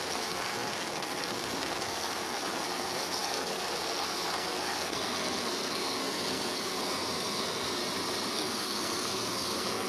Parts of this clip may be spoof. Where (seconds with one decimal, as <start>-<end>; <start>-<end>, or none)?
0.0-7.8; 8.3-9.9